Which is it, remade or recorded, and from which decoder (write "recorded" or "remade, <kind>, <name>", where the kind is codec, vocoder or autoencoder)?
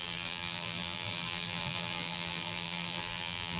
remade, vocoder, BigVGAN v2